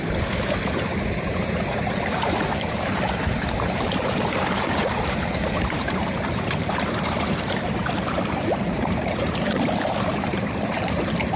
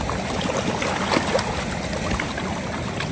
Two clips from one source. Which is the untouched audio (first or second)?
second